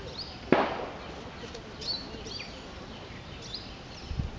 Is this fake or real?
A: real